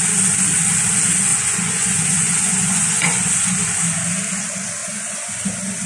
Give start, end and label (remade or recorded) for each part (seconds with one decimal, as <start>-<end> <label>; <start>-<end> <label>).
0.0-1.3 recorded; 1.3-3.7 remade; 3.7-4.8 recorded; 4.8-5.4 remade; 5.4-5.9 recorded